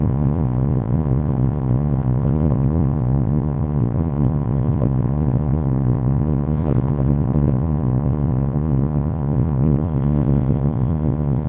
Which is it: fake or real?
fake